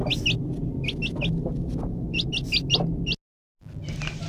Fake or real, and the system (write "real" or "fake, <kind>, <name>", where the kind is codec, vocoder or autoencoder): real